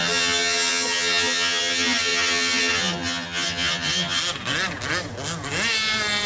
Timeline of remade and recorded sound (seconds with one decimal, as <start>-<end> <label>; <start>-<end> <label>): 0.0-4.2 remade; 4.2-6.3 recorded